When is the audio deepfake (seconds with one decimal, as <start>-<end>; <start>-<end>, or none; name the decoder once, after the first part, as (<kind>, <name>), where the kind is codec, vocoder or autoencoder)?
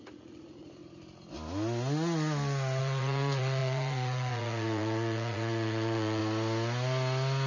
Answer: 0.0-0.8 (vocoder, Vocos); 2.8-6.2